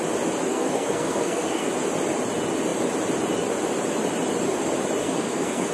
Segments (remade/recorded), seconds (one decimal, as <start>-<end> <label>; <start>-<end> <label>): 0.0-0.5 recorded; 0.5-1.7 remade; 1.7-5.0 recorded; 5.0-5.7 remade